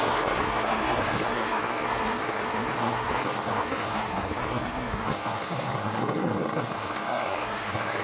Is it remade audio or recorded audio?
remade